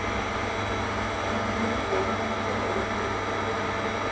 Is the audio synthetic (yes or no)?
no